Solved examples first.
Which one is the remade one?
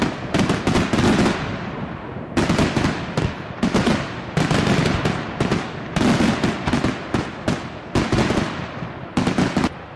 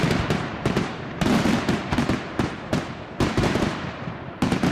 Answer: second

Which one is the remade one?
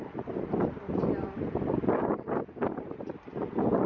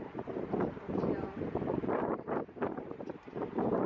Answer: second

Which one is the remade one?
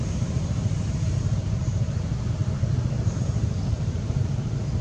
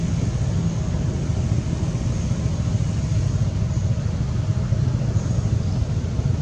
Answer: first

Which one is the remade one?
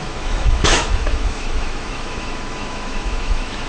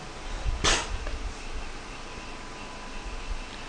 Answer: first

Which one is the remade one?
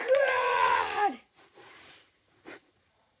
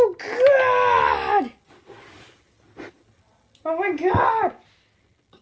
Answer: first